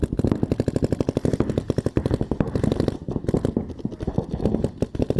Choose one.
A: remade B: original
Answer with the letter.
B